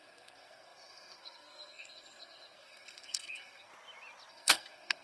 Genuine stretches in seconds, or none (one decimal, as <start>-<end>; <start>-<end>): 3.7-4.3